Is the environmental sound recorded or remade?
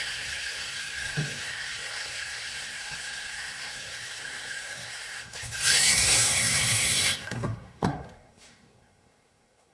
remade